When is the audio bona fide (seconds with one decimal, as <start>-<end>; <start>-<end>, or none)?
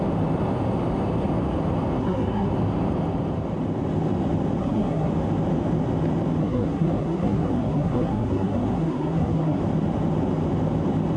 0.0-2.0; 2.5-4.6; 5.1-6.4; 9.6-11.2